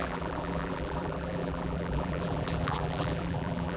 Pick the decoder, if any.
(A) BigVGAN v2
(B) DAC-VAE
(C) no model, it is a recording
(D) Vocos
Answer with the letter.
A